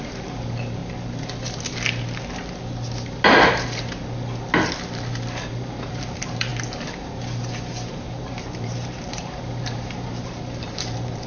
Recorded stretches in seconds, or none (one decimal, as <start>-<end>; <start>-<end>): 0.8-5.5; 6.5-7.9